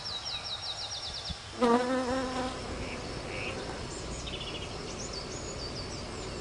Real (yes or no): yes